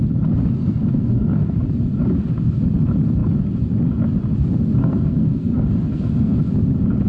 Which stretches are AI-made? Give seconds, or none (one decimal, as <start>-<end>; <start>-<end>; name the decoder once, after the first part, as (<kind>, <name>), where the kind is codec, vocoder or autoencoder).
0.6-1.6 (codec, SNAC); 4.8-6.5